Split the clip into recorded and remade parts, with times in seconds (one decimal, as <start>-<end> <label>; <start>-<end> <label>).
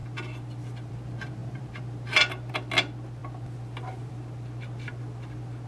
0.0-5.7 recorded